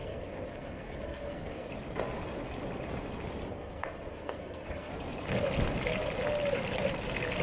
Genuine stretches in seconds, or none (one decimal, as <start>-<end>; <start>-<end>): 1.7-3.5; 4.9-7.4